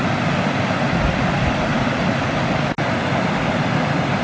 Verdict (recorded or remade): recorded